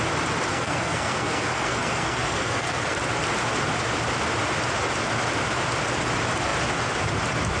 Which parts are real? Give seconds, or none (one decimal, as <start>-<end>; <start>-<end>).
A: 0.0-0.5; 3.0-7.6